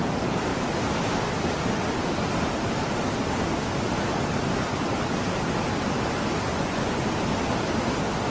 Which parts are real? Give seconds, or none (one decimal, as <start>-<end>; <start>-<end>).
0.0-6.5; 7.0-8.3